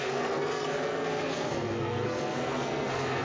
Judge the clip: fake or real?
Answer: fake